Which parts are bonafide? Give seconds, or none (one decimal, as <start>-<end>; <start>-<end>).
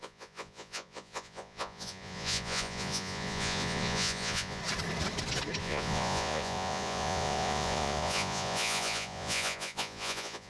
4.6-5.6